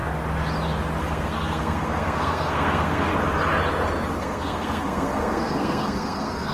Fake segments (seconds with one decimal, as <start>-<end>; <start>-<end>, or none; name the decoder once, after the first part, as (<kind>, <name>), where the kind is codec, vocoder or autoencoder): 1.0-3.1 (codec, SNAC); 4.2-6.5

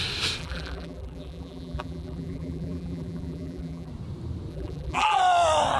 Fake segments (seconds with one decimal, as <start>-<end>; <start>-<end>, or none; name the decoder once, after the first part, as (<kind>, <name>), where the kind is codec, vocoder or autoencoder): 0.4-3.9 (vocoder, BigVGAN v2); 4.5-5.2

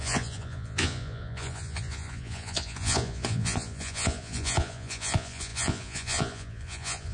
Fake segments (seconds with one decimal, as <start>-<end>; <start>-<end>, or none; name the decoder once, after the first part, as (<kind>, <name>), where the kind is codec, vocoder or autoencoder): 0.0-7.1 (vocoder, Vocos)

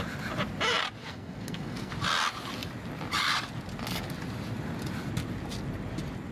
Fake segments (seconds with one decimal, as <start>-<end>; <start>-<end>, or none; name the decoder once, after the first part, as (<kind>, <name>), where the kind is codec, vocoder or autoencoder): 1.0-1.9 (codec, SNAC)

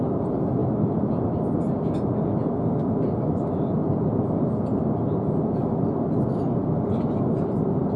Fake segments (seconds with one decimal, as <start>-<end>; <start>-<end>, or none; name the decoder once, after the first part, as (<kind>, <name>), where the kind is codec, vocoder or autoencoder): none

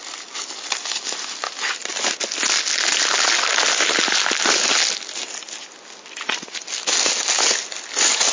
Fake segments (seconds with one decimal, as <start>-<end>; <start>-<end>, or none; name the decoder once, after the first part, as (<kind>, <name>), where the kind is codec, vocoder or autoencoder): none

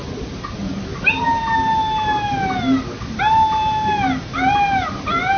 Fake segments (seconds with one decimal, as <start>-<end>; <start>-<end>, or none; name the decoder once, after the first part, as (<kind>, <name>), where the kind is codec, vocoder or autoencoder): none

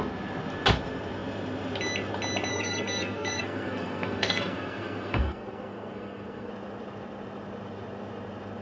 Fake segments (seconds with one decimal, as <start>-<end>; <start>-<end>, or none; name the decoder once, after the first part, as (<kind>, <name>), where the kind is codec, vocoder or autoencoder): 2.5-6.5 (codec, SNAC)